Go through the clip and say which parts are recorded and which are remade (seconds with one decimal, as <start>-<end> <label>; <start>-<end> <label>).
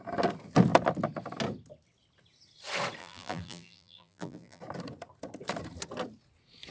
0.0-3.0 recorded; 3.0-4.6 remade; 4.6-6.7 recorded